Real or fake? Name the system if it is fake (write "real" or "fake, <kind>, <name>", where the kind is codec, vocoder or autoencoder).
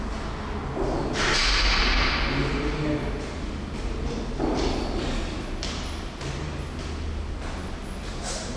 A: real